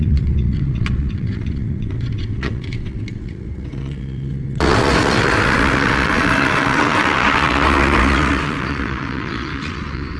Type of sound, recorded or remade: remade